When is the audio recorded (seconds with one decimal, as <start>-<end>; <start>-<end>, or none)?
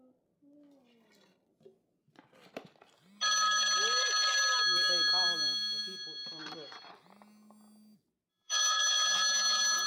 0.0-8.3